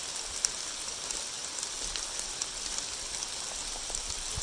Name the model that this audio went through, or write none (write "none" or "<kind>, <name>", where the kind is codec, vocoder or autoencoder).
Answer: none